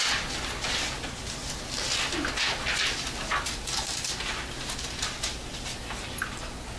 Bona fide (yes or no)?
yes